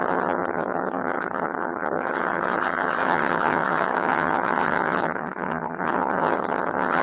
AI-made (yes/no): yes